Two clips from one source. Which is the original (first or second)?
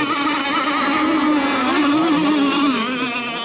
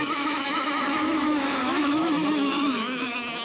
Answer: first